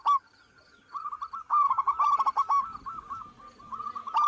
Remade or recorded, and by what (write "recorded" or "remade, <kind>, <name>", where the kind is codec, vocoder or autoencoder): recorded